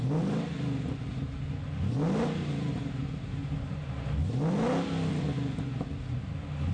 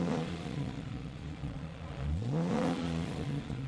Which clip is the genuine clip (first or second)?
first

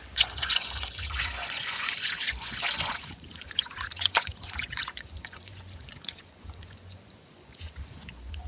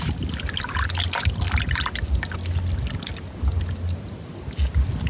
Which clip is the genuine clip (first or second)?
second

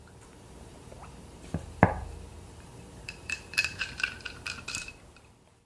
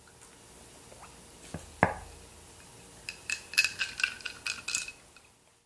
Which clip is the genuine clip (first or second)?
second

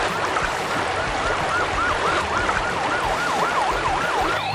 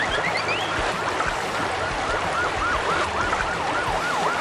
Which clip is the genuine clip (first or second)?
second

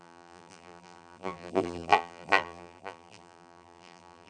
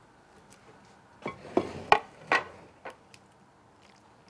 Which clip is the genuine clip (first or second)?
second